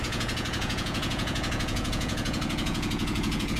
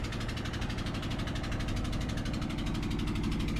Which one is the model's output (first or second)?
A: first